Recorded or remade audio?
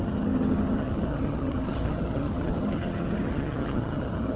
remade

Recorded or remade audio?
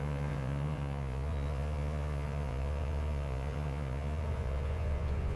remade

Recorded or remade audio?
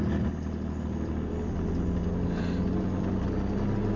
recorded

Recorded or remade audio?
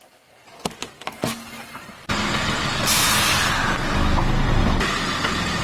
recorded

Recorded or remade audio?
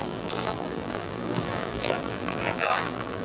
remade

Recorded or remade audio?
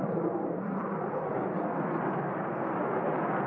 recorded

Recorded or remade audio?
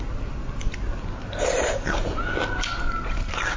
recorded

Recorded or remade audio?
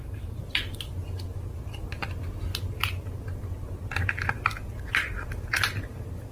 recorded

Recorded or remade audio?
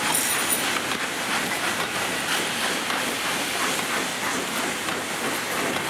recorded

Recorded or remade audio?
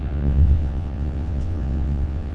remade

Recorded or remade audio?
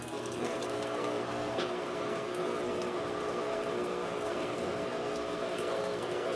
remade